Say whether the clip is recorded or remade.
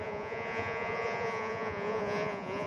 remade